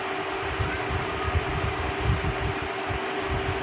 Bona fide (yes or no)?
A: yes